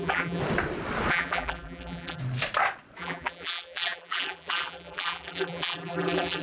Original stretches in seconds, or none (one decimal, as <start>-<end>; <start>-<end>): 0.4-1.1; 2.2-3.0